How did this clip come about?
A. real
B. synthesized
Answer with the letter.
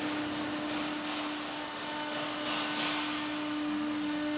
A